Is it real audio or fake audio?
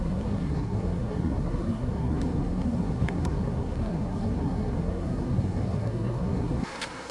fake